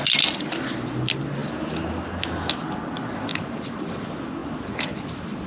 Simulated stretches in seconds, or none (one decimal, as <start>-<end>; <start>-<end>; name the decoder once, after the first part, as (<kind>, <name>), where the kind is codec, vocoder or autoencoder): 3.3-4.0 (vocoder, BigVGAN v2)